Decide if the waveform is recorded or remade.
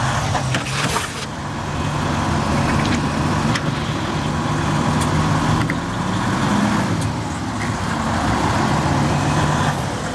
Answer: recorded